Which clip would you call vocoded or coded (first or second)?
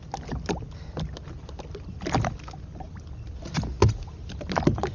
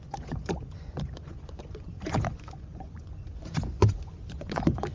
second